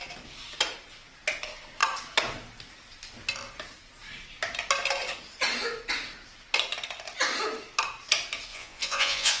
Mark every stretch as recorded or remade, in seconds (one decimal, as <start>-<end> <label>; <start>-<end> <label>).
0.0-8.5 recorded; 8.5-9.4 remade